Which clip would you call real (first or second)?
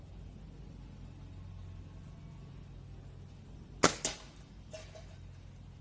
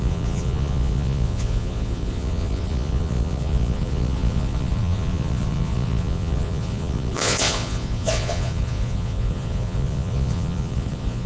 first